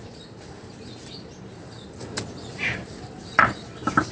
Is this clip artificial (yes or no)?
no